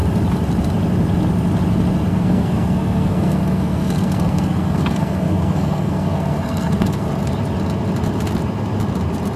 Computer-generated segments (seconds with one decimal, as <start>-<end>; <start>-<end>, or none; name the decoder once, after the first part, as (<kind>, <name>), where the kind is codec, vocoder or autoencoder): 2.1-7.1 (codec, SNAC)